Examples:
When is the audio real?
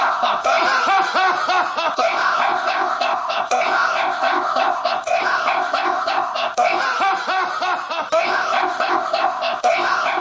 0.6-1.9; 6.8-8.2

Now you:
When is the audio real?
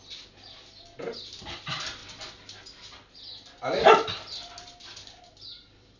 0.0-6.0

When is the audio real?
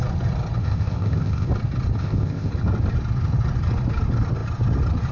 0.0-0.6; 1.5-2.0; 2.5-5.1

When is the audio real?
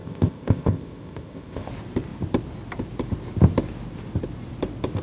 1.7-5.0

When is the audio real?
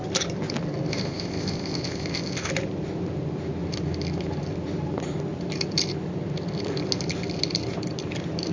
0.0-0.9; 2.5-8.5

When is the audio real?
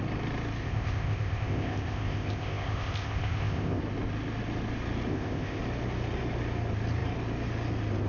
0.0-0.6; 3.8-5.1; 5.6-8.1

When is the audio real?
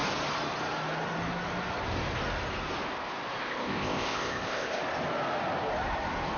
0.0-3.4; 4.8-6.4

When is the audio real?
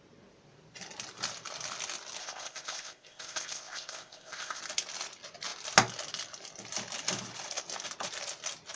0.0-2.2; 4.6-8.8